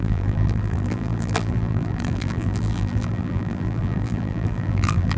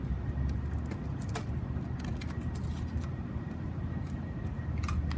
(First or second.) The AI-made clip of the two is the first